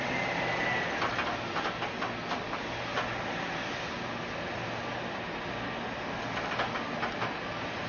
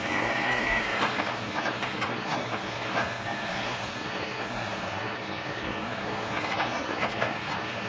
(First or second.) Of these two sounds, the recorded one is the first